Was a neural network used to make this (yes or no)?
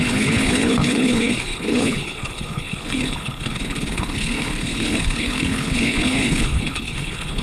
yes